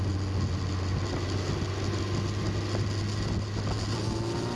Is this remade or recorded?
recorded